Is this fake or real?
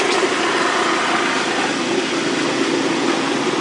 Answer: real